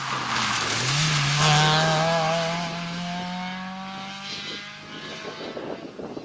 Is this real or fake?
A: real